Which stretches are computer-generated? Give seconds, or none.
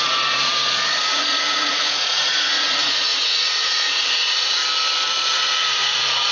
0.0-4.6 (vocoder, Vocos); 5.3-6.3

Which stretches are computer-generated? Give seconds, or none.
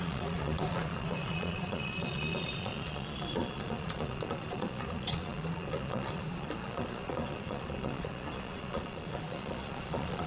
0.0-10.3 (vocoder, Vocos)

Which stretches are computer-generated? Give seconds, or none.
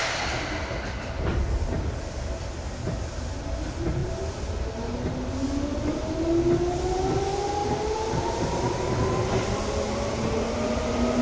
none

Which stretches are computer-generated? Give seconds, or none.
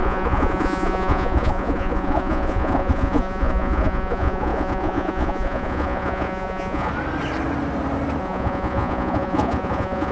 0.0-6.9 (vocoder, Vocos); 8.2-10.1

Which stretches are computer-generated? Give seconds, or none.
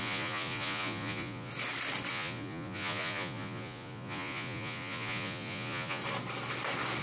0.0-1.5 (vocoder, Vocos); 2.1-6.0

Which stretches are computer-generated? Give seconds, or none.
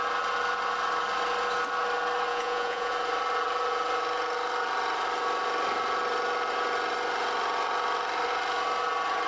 2.3-2.9 (vocoder, Vocos)